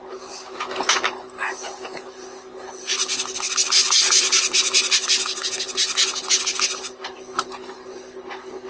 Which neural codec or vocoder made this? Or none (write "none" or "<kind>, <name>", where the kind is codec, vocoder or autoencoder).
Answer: none